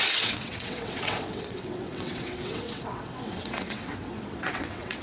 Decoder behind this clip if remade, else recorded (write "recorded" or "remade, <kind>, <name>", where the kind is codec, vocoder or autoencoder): remade, vocoder, WaveNeXt